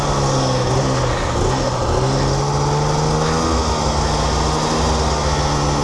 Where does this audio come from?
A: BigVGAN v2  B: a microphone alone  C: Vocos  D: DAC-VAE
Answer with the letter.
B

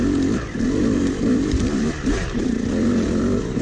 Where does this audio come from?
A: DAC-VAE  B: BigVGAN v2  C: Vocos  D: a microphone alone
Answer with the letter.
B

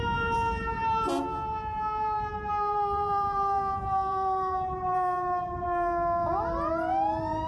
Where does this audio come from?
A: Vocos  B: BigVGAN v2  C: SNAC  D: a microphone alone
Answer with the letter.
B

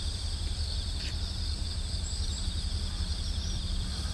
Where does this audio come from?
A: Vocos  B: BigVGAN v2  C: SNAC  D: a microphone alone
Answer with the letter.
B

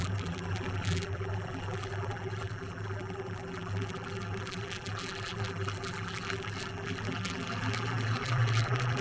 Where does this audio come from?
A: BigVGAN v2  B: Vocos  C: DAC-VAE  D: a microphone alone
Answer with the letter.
A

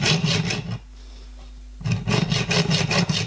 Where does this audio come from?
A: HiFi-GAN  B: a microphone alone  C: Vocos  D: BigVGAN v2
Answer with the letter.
B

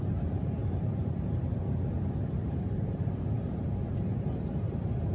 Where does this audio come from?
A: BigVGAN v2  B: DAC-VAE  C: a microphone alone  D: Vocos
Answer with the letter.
A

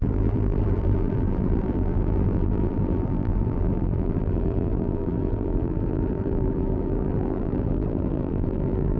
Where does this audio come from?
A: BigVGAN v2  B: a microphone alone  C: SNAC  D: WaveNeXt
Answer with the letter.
A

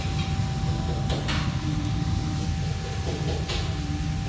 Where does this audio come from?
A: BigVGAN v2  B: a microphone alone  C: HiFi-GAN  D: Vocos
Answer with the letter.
B